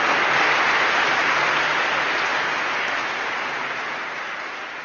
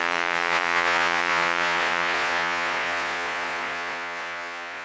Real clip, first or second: first